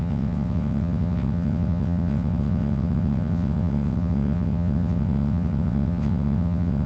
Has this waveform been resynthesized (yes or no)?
yes